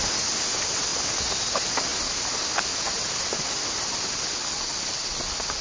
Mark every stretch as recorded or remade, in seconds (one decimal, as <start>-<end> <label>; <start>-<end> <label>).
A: 0.0-5.6 recorded